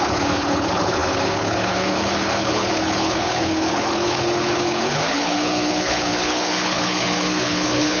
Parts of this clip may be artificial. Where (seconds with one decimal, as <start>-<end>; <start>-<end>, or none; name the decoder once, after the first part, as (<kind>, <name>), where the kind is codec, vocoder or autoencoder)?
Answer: 0.0-8.0 (codec, HILCodec)